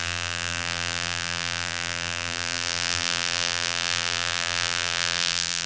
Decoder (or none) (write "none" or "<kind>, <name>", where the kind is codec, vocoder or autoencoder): vocoder, BigVGAN v2